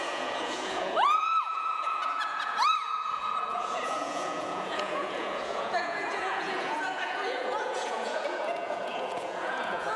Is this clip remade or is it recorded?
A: remade